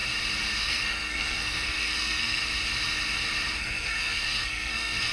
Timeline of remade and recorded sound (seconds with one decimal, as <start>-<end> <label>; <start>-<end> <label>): 0.0-0.6 recorded; 0.6-2.4 remade; 2.4-3.6 recorded; 3.6-5.1 remade

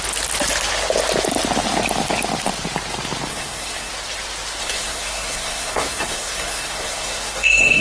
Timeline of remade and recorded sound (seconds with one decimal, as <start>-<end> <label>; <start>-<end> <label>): 0.0-3.3 recorded; 3.3-3.9 remade; 3.9-4.6 recorded; 4.6-7.8 remade